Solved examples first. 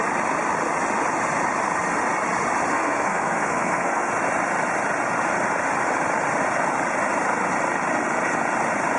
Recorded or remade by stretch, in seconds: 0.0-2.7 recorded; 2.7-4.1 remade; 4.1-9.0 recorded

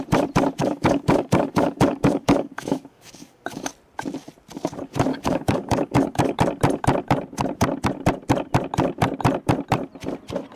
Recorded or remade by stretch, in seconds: 0.0-0.6 recorded; 0.6-3.7 remade; 3.7-5.1 recorded; 5.1-6.4 remade; 6.4-10.6 recorded